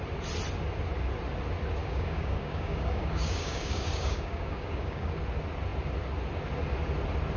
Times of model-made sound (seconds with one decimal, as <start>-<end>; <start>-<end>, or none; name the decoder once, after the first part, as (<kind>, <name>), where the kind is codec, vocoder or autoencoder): 1.8-5.1 (codec, DAC)